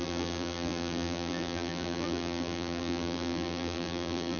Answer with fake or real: fake